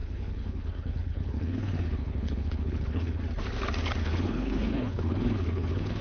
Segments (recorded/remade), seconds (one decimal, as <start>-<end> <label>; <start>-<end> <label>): 0.0-3.2 remade; 3.2-4.0 recorded; 4.0-6.0 remade